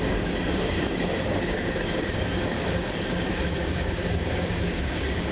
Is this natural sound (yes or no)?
no